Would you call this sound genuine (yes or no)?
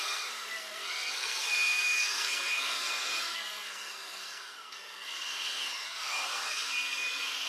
no